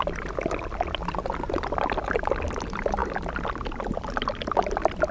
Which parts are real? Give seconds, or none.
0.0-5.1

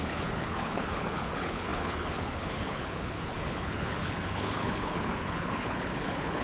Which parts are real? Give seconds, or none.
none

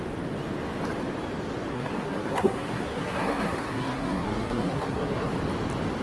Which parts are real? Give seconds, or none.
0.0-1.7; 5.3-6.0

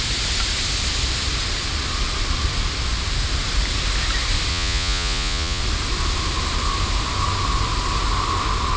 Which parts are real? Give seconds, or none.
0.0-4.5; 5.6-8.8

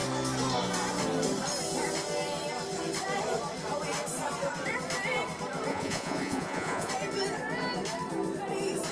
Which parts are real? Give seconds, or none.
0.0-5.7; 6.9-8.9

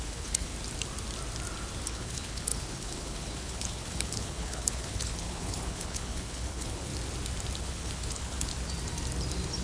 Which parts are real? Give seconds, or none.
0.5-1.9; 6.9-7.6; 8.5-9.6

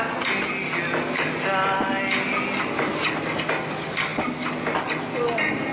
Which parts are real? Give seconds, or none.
0.0-5.7

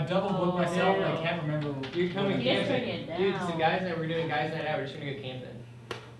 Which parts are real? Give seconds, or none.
0.0-5.6